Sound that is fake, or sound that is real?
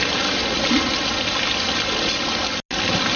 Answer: real